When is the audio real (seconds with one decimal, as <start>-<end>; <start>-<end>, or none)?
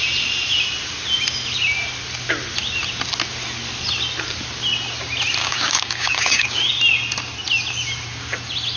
0.0-5.4; 6.6-8.8